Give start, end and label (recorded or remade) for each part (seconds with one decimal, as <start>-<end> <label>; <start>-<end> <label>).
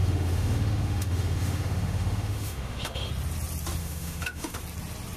0.0-3.1 remade; 3.1-3.8 recorded; 3.8-4.6 remade; 4.6-5.2 recorded